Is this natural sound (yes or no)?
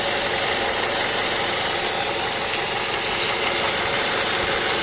yes